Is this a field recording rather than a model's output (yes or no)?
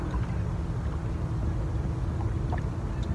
yes